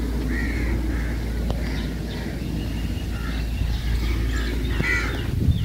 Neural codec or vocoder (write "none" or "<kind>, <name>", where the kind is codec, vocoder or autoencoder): none